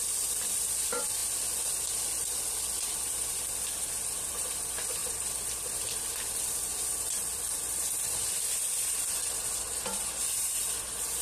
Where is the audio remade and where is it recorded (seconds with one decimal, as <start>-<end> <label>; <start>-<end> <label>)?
0.0-11.2 remade